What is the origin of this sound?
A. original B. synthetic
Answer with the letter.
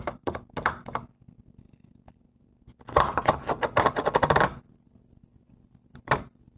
A